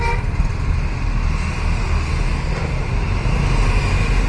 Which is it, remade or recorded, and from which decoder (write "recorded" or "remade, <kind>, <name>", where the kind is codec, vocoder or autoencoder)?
recorded